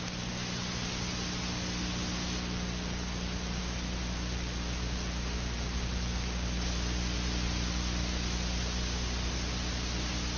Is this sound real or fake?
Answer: real